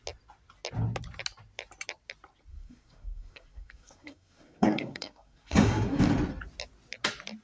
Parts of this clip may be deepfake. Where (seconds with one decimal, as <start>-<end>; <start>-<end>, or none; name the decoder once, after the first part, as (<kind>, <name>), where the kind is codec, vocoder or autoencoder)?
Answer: 2.5-6.0 (codec, SNAC)